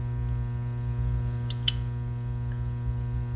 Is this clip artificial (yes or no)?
no